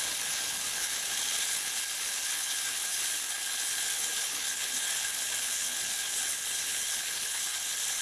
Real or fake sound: fake